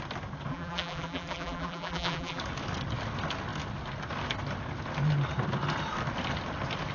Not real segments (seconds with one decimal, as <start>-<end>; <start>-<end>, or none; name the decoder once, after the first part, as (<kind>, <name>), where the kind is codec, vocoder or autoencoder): 0.5-2.4 (vocoder, BigVGAN v2)